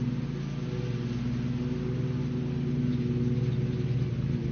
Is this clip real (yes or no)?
yes